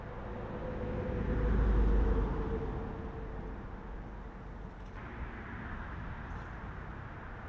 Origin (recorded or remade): recorded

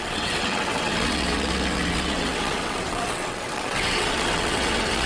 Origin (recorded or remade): remade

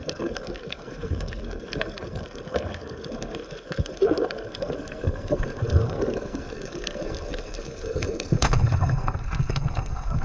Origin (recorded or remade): remade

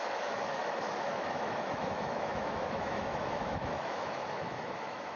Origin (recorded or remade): remade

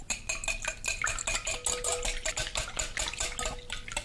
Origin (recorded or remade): recorded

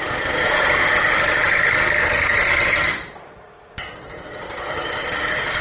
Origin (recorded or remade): remade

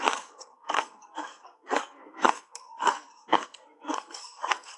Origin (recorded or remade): remade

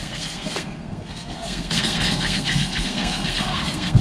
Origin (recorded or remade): remade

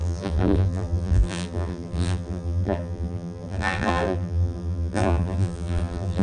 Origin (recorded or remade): remade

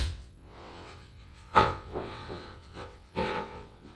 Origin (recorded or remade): remade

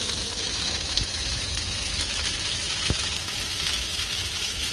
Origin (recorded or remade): remade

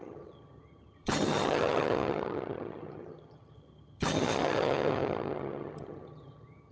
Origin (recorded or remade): remade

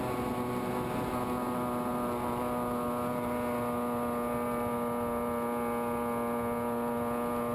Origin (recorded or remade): recorded